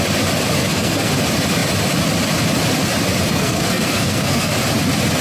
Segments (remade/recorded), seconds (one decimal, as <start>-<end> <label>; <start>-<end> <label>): 0.0-0.6 recorded; 0.6-1.1 remade; 1.1-3.3 recorded; 3.3-4.5 remade; 4.5-5.2 recorded